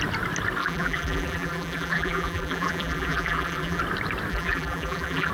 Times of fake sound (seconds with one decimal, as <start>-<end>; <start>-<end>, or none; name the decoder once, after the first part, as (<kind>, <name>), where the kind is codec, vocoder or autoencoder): 0.6-3.8 (vocoder, BigVGAN v2); 4.3-5.3